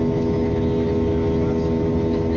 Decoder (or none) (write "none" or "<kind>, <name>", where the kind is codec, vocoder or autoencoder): none